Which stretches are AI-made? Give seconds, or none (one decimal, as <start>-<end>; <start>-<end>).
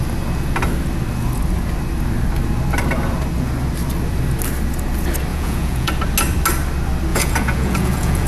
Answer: 5.3-5.9; 7.1-8.3